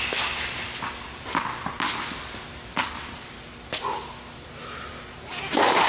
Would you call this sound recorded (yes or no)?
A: yes